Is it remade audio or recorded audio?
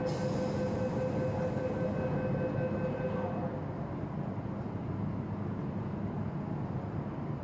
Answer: recorded